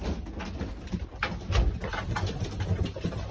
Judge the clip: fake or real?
real